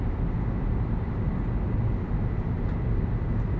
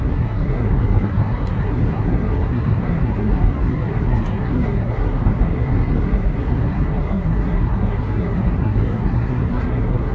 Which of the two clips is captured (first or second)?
first